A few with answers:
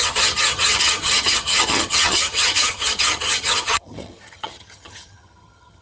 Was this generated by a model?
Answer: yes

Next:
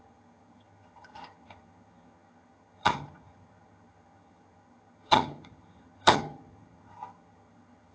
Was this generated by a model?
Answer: yes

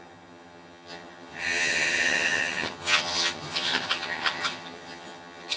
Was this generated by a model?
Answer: yes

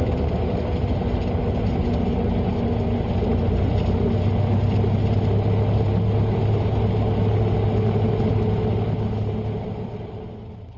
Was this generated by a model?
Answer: no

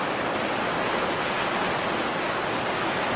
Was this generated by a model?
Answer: no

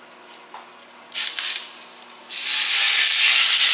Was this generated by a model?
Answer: no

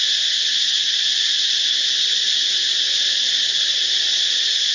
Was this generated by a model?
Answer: no